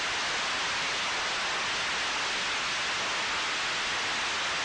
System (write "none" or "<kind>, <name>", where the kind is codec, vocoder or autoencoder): none